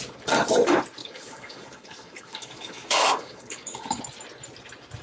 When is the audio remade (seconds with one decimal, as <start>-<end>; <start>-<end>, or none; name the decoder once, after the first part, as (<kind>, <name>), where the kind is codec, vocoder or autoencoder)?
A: 1.0-4.0 (codec, DAC)